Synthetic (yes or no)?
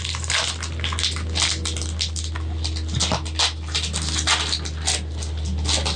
no